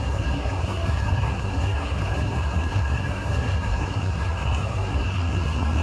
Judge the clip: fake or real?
fake